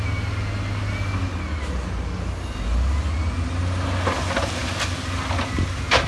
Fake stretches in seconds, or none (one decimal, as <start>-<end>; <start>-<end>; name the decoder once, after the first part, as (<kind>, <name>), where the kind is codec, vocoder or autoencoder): none